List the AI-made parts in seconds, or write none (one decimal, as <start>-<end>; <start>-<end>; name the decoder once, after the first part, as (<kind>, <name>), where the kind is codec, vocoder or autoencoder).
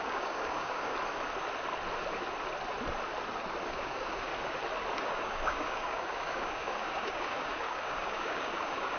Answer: 0.0-0.9 (codec, DAC); 3.7-4.3; 5.0-9.0